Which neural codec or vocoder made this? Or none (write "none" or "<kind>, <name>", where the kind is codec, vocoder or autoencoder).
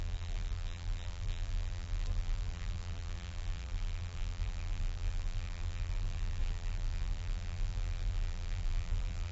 vocoder, BigVGAN v2